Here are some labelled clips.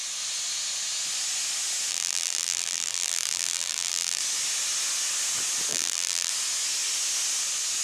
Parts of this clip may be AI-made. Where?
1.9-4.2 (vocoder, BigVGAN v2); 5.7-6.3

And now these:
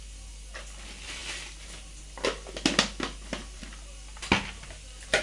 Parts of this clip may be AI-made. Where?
none

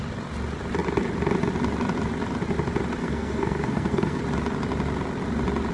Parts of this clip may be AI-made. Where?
3.0-4.2 (codec, SNAC)

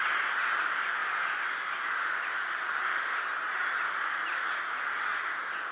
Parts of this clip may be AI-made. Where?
none